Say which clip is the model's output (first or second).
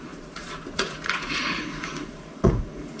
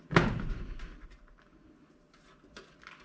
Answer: first